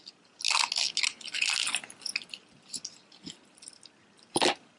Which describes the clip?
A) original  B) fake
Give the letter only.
A